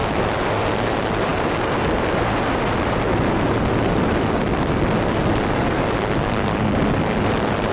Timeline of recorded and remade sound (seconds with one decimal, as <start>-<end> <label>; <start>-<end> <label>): 0.0-7.7 recorded